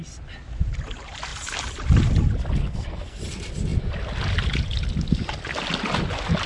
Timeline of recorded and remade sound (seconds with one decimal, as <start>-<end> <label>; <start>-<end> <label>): 0.0-2.6 recorded; 2.6-3.2 remade; 3.2-6.5 recorded